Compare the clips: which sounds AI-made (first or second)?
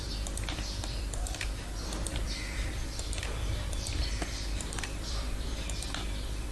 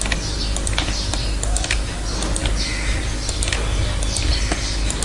first